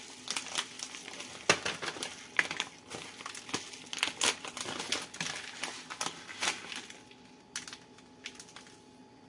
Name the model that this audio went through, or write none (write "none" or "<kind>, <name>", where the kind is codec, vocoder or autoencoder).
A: none